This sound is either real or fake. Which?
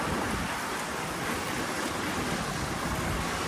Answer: fake